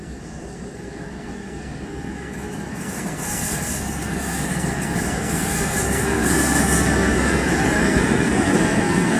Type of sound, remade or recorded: remade